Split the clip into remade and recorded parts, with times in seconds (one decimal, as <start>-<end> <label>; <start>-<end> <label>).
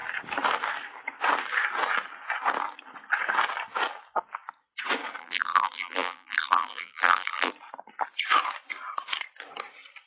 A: 0.0-5.2 recorded; 5.2-7.5 remade; 7.5-10.1 recorded